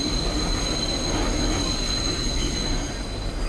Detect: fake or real real